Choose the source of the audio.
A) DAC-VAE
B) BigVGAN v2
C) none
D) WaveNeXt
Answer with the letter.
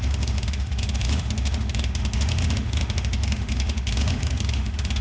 A